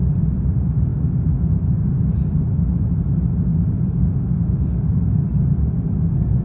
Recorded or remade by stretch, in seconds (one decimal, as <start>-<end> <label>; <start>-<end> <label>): 0.0-6.4 recorded